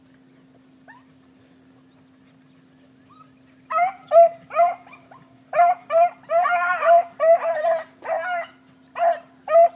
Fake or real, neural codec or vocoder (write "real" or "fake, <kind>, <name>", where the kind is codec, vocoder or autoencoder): real